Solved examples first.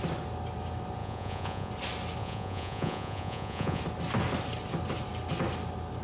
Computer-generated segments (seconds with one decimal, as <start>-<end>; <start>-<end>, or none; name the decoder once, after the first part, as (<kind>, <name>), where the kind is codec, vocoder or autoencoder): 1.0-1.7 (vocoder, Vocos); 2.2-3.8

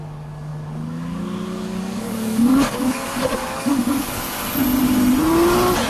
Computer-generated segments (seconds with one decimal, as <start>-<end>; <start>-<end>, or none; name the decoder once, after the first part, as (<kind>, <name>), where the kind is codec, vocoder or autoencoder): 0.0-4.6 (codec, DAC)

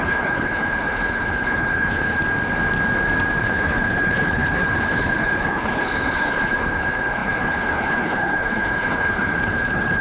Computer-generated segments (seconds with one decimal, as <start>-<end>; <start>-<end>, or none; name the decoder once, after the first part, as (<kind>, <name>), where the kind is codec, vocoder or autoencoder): 0.0-2.2 (codec, HILCodec); 3.4-10.0

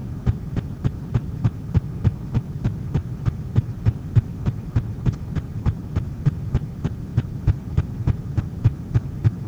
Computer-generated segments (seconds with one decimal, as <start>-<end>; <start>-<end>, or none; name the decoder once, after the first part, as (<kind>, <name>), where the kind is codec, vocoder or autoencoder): 0.0-9.5 (vocoder, BigVGAN v2)

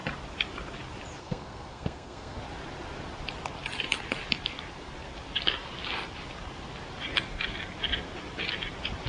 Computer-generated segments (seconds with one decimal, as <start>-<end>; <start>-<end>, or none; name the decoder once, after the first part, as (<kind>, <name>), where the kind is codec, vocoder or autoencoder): 1.2-2.4 (codec, SNAC)

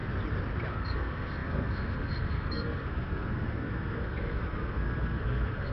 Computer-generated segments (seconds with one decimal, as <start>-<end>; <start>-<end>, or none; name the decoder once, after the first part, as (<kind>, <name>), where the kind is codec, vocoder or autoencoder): 0.7-5.7 (codec, SNAC)

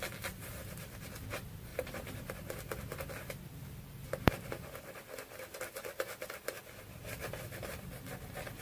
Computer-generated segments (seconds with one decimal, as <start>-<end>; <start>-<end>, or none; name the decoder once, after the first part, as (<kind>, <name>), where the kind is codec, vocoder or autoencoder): 1.7-3.1 (vocoder, BigVGAN v2)

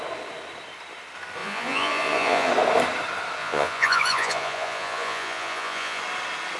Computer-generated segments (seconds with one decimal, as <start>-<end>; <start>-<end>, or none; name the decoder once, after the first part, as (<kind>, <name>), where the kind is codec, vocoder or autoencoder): 1.4-2.5 (vocoder, Vocos); 3.4-6.0